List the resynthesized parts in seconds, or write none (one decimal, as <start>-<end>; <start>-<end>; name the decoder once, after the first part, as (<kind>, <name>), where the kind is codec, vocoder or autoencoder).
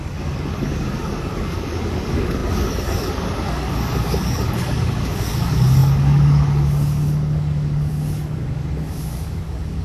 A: 0.0-9.8 (codec, DAC)